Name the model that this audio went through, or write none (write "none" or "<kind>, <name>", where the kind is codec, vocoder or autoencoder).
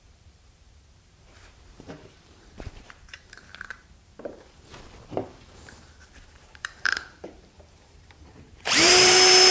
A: vocoder, BigVGAN v2